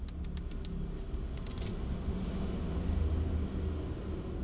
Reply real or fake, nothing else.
real